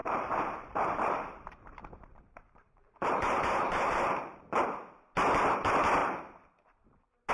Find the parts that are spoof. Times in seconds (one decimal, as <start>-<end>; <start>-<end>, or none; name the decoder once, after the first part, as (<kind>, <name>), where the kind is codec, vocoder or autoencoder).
0.0-4.4 (vocoder, BigVGAN v2); 6.0-7.3